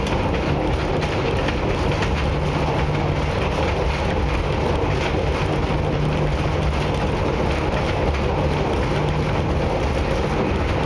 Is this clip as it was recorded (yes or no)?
yes